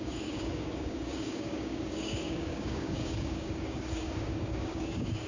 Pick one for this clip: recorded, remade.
remade